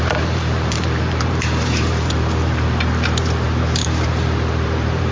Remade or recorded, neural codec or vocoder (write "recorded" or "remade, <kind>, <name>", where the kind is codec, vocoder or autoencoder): remade, vocoder, BigVGAN v2